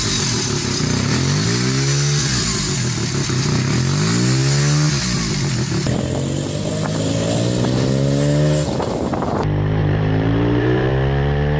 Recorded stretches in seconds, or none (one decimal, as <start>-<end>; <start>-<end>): 0.0-9.8; 10.9-11.6